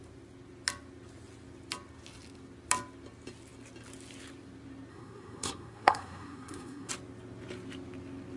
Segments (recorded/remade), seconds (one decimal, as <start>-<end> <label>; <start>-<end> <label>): 0.0-4.9 recorded; 4.9-6.9 remade; 6.9-8.4 recorded